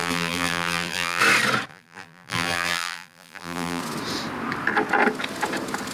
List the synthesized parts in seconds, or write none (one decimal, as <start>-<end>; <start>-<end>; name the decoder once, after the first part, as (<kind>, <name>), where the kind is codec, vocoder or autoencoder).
0.0-1.2 (vocoder, BigVGAN v2); 1.7-3.8